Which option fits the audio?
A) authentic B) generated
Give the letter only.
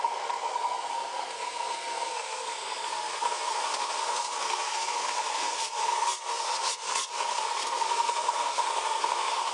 B